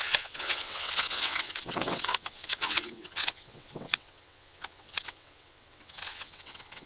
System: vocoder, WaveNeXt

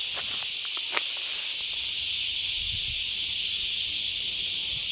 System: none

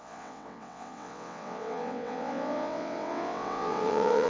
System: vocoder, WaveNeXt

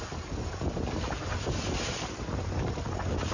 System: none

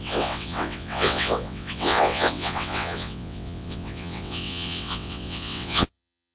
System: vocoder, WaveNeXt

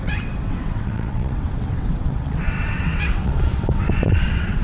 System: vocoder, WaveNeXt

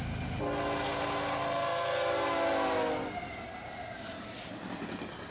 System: none